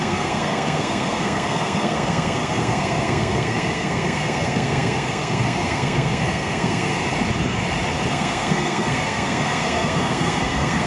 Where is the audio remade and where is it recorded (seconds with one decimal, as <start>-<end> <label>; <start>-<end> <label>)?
0.0-7.0 remade; 7.0-8.1 recorded; 8.1-10.9 remade